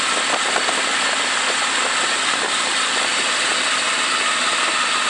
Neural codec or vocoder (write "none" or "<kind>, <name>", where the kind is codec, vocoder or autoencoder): none